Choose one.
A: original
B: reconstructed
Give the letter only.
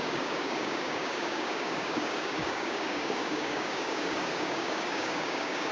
B